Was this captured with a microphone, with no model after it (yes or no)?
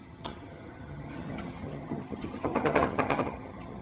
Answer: no